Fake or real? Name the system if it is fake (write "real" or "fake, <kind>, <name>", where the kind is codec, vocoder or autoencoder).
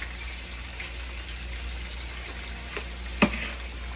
real